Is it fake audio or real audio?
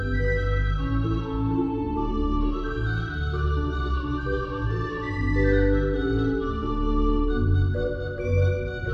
real